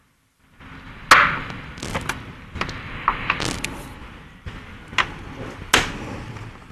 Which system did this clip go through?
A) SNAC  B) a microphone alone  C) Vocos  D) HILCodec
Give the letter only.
B